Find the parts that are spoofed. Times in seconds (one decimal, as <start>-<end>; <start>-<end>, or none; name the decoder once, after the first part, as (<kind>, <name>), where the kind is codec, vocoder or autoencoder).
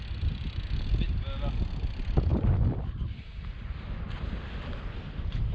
none